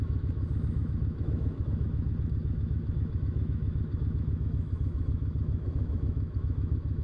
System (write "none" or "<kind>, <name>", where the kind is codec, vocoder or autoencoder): autoencoder, DAC-VAE